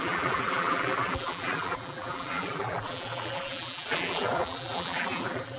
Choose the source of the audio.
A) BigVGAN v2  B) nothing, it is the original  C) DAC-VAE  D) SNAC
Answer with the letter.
A